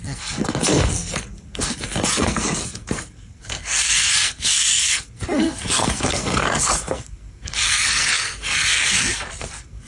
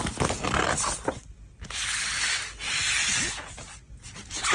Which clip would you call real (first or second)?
second